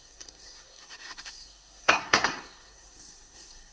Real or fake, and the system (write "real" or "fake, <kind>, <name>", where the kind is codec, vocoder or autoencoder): fake, codec, SNAC